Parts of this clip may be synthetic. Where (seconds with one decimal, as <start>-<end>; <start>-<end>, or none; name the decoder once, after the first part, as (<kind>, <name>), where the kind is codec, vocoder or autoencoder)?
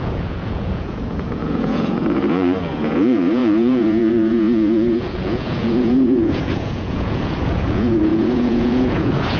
0.0-9.4 (vocoder, Vocos)